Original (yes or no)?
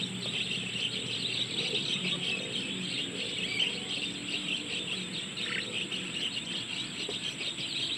yes